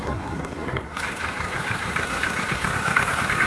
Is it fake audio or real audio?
fake